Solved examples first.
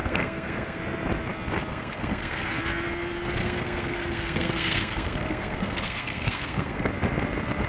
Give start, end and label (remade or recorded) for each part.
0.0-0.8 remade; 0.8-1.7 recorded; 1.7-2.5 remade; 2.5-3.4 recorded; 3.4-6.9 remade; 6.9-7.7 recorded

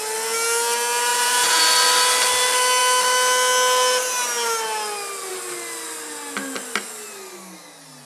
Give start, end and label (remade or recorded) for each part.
0.0-1.1 recorded; 1.1-1.6 remade; 1.6-8.0 recorded

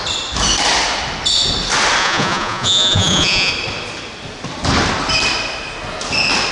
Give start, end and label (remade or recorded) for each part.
0.0-2.0 recorded; 2.0-3.5 remade; 3.5-6.5 recorded